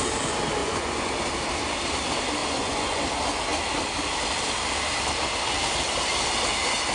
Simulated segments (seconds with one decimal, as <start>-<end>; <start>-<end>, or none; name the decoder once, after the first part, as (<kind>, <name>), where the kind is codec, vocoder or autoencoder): 0.6-1.1 (vocoder, Vocos); 2.4-3.0